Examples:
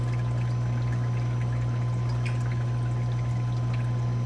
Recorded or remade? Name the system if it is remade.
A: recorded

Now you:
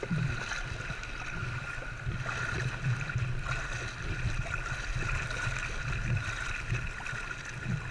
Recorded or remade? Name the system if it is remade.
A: recorded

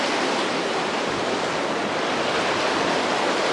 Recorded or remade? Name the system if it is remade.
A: recorded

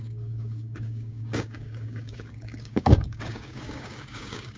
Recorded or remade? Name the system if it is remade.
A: remade, codec, DAC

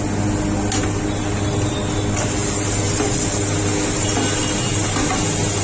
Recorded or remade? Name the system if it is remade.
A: recorded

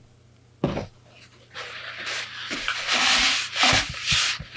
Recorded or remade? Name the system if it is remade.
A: recorded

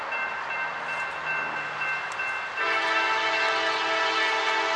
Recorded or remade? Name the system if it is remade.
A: recorded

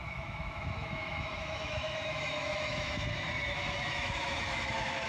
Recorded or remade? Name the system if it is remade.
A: remade, autoencoder, DAC-VAE